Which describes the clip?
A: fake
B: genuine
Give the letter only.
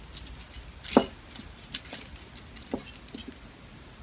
B